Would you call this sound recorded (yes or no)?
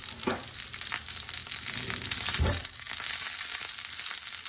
yes